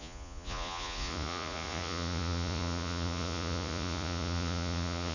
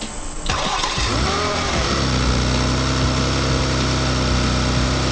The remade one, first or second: first